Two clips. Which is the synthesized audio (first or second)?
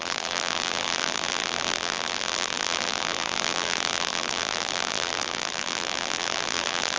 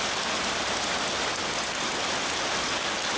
first